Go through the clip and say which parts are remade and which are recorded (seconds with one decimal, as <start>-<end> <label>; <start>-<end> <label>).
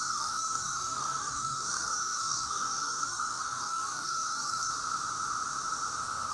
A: 0.0-4.7 remade; 4.7-6.3 recorded